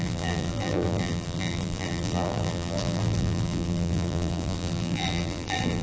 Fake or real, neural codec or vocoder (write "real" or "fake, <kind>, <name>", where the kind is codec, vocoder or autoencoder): fake, vocoder, BigVGAN v2